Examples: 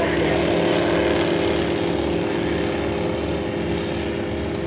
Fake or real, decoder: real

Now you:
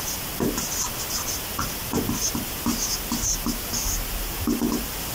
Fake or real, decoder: real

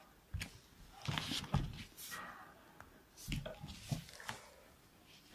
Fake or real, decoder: real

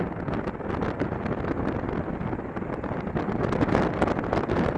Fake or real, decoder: real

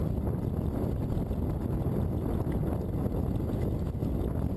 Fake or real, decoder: real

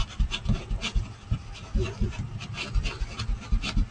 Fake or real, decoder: real